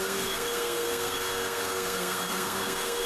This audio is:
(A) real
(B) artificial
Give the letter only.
B